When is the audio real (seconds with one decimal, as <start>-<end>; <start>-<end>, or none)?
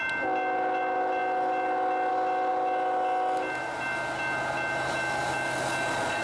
0.0-6.2